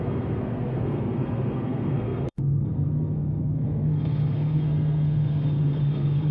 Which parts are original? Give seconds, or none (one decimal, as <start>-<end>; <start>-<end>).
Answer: none